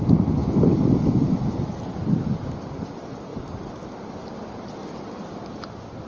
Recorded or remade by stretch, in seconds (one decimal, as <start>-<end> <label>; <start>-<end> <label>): 0.0-6.1 recorded